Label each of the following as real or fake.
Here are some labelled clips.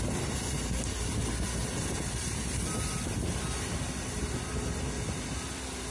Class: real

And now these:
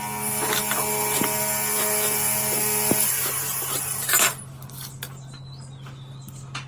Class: real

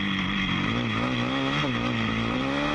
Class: real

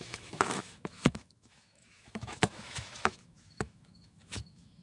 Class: fake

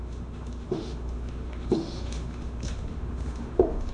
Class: fake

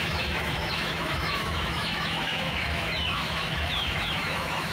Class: fake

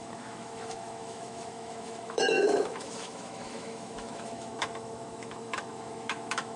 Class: fake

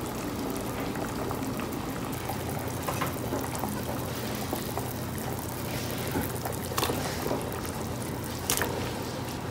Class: real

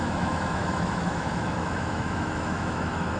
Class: fake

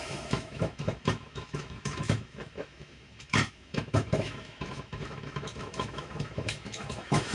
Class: fake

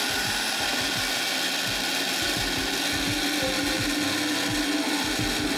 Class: real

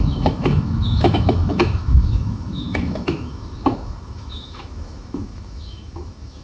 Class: fake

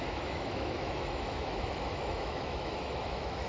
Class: fake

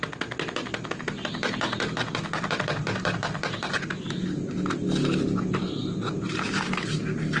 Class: real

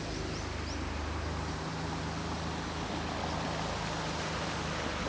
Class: real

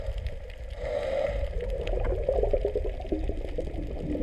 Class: real